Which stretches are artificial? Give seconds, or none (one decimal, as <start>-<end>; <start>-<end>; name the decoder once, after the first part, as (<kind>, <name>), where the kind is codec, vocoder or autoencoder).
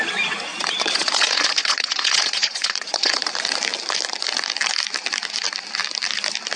0.5-3.3 (vocoder, Vocos)